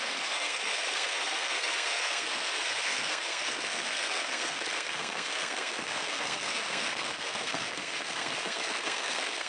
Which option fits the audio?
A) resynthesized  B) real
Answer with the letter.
A